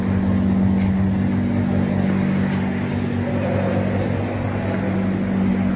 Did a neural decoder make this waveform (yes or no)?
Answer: no